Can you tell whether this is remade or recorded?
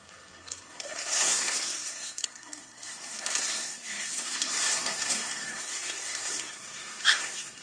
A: remade